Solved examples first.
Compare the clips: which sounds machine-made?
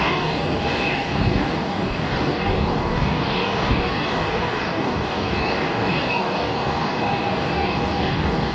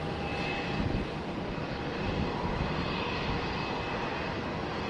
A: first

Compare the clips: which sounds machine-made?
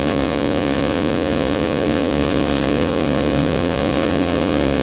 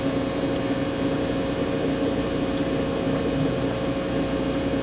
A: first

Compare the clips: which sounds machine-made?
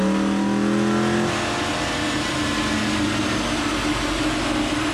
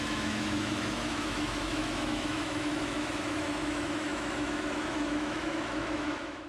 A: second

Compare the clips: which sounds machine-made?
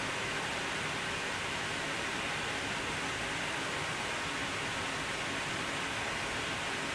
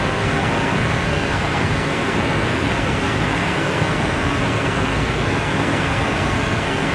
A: second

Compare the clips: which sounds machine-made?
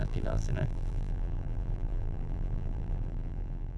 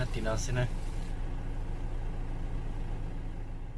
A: first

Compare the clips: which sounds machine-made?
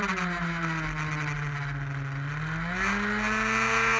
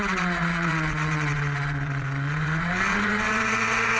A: second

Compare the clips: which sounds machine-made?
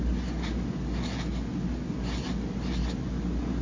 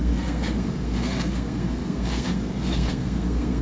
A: second